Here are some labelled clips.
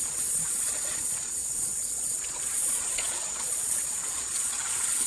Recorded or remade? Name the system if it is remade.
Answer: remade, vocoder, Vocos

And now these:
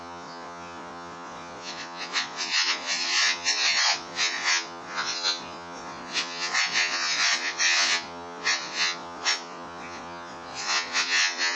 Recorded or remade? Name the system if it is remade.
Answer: remade, vocoder, Vocos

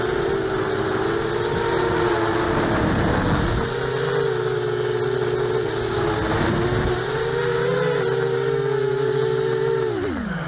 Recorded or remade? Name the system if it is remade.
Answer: recorded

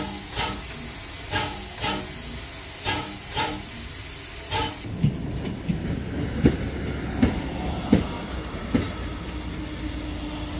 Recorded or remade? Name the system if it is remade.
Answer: recorded